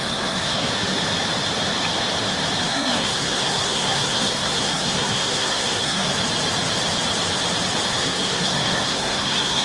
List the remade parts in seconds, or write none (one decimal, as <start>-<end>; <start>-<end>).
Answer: 0.0-0.7; 2.7-6.1; 7.9-9.6

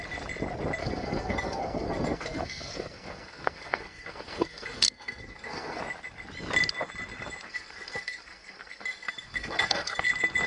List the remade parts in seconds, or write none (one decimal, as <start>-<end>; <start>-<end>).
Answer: 0.8-5.8; 7.5-10.0